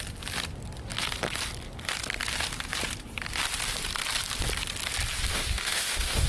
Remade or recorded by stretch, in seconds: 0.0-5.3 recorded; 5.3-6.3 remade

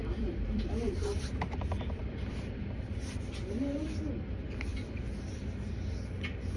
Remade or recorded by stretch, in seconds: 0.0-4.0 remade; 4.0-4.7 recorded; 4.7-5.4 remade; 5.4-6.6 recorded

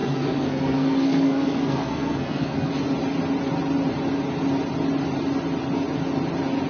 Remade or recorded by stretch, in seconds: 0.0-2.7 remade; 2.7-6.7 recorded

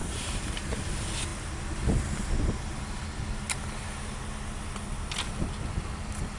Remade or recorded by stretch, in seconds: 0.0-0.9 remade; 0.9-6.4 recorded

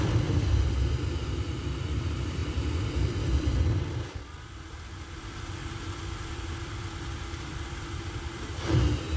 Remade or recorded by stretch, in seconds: 0.0-9.2 remade

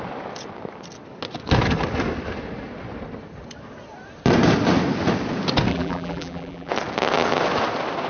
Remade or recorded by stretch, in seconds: 0.0-5.7 recorded; 5.7-6.7 remade; 6.7-8.1 recorded